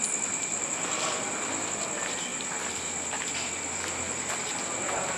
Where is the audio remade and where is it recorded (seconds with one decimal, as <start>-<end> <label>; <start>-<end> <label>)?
0.0-5.2 recorded